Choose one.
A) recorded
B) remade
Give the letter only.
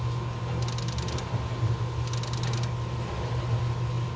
A